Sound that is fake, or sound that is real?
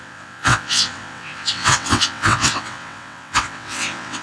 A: fake